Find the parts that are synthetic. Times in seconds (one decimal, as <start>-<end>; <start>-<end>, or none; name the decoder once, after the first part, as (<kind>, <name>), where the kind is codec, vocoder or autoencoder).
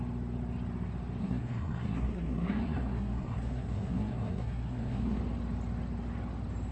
1.2-5.2 (codec, SNAC)